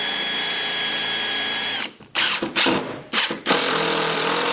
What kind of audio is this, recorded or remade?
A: remade